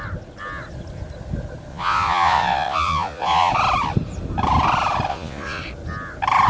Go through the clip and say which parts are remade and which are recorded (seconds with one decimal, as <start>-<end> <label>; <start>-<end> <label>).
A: 0.0-1.7 recorded; 1.7-3.5 remade; 3.5-5.1 recorded; 5.1-5.6 remade; 5.6-6.5 recorded